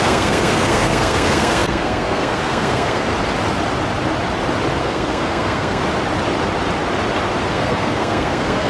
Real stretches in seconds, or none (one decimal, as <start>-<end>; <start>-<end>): 3.1-4.8; 5.8-7.5